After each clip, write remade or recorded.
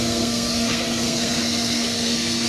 remade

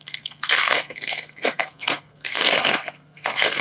remade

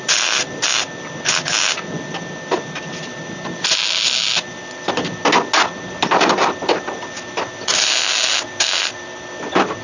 recorded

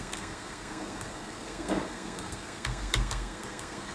remade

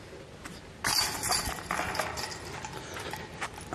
recorded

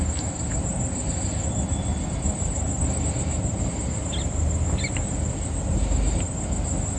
recorded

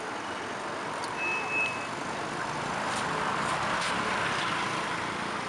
recorded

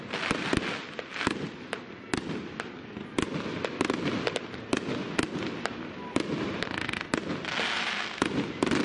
recorded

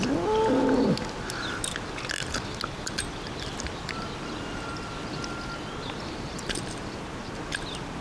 recorded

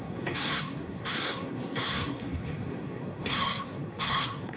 remade